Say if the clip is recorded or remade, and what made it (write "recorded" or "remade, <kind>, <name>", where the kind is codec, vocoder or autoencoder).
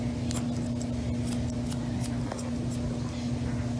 recorded